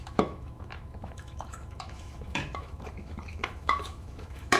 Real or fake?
fake